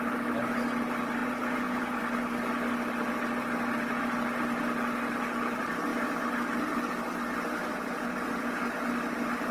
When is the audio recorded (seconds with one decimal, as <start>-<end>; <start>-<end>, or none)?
0.0-1.2; 2.0-7.7; 8.6-9.5